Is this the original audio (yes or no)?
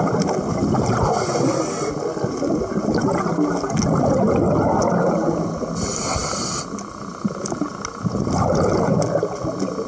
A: yes